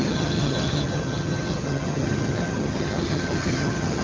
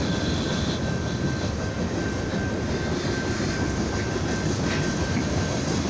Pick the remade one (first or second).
first